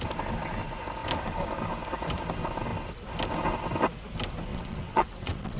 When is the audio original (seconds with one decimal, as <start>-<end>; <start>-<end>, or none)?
0.0-4.5